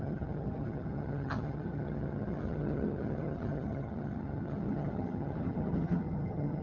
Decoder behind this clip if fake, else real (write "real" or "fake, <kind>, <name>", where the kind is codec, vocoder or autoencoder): fake, vocoder, HiFi-GAN